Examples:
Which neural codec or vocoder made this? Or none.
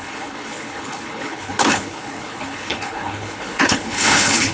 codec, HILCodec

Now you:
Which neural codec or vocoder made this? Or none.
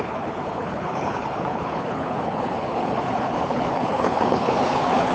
codec, HILCodec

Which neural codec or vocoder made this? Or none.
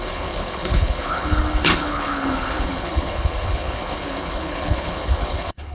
codec, HILCodec